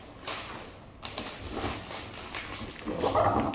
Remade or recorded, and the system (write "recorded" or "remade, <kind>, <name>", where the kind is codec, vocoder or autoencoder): recorded